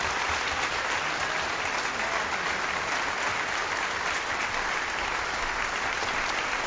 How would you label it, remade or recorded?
recorded